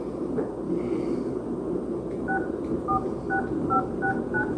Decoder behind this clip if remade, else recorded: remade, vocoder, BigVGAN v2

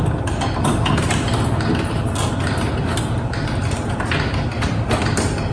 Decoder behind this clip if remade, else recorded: recorded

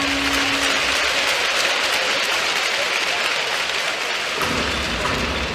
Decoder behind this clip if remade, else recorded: recorded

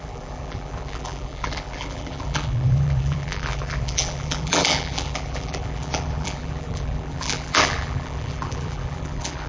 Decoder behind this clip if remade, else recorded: remade, vocoder, BigVGAN v2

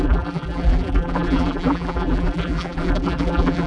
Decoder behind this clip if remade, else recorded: remade, vocoder, BigVGAN v2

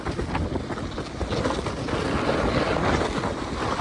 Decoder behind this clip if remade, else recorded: recorded